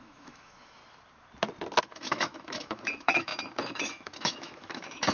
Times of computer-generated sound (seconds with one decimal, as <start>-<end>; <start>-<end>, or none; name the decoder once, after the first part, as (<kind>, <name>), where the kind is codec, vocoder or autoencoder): 0.0-0.8 (autoencoder, DAC-VAE); 1.8-5.1